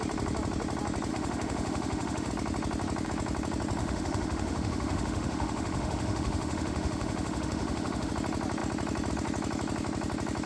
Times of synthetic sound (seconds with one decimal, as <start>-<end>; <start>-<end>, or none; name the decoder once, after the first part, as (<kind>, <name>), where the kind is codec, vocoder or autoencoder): 1.1-2.3 (autoencoder, DAC-VAE); 3.8-8.1